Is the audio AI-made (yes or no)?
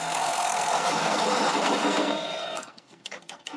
yes